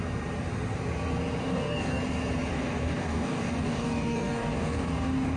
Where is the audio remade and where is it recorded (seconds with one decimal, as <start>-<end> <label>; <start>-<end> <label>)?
0.0-1.4 recorded; 1.4-2.0 remade; 2.0-2.5 recorded; 2.5-5.4 remade